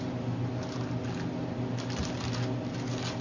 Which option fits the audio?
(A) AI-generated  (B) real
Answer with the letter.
B